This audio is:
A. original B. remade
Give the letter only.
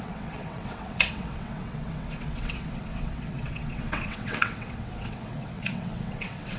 B